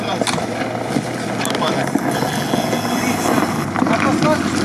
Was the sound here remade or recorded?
recorded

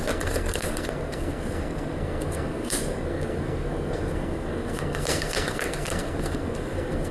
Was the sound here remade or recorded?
remade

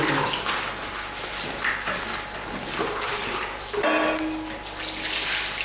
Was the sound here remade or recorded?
recorded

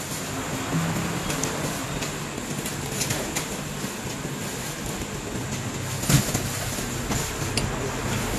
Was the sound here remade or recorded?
recorded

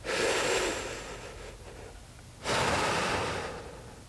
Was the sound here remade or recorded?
recorded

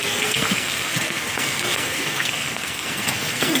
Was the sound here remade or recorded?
remade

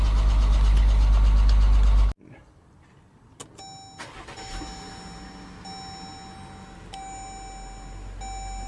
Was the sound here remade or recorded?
recorded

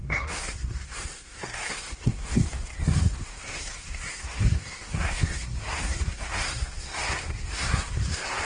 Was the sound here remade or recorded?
remade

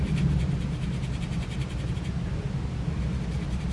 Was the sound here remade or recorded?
recorded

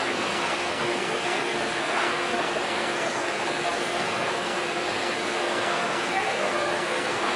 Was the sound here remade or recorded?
remade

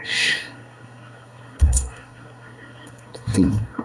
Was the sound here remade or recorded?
remade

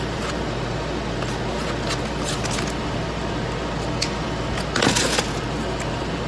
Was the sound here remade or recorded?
recorded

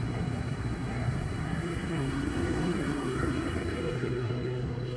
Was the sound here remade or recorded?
remade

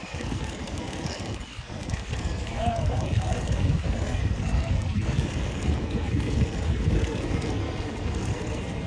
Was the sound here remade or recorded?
remade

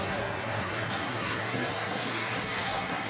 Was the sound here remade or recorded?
remade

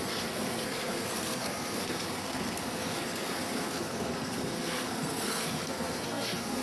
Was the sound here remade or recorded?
remade